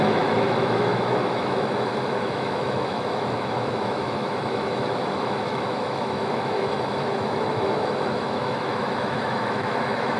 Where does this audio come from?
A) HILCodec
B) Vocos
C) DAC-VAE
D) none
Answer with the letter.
C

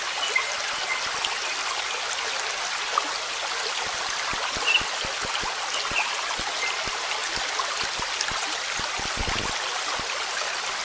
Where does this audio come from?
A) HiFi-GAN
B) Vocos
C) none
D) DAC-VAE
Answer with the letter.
C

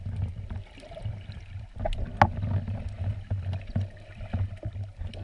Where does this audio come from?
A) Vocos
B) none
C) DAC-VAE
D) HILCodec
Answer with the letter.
B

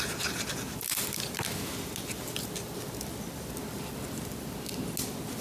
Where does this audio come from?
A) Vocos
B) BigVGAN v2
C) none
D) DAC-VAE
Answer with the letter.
C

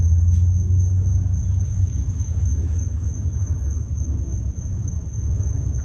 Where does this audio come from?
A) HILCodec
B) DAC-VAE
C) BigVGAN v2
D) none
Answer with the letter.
B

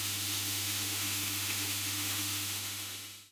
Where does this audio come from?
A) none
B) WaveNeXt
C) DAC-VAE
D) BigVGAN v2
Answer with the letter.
C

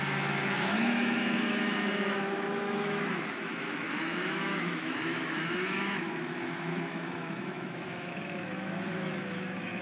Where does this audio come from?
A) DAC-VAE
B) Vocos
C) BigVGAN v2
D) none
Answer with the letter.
A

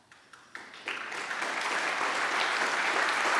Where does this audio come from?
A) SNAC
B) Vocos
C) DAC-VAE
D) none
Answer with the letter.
D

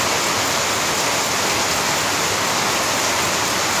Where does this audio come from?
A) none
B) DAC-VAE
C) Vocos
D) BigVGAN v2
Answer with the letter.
A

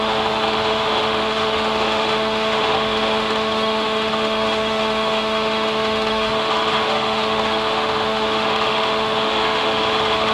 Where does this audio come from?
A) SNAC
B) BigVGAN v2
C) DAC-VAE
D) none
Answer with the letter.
C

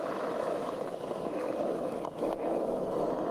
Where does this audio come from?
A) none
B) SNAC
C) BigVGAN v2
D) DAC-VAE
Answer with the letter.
D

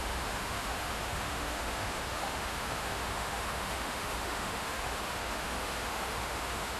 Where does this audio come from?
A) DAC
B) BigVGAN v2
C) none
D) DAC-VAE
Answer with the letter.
D